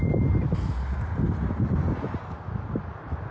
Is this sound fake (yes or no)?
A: no